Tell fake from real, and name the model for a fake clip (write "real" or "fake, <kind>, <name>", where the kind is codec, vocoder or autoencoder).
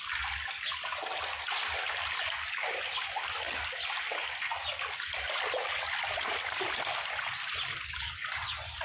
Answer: real